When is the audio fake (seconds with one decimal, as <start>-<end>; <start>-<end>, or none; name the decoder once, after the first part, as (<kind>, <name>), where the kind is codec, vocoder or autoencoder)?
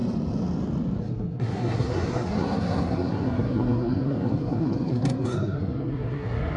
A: 1.0-6.6 (codec, SNAC)